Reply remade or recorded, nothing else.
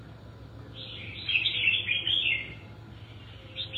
recorded